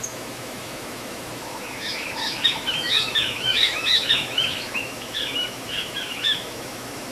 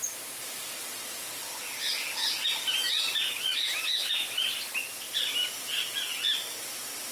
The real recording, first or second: second